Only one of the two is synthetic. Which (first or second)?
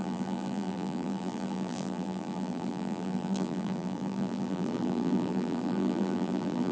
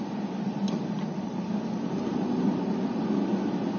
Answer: first